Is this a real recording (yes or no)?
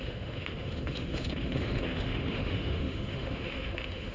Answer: no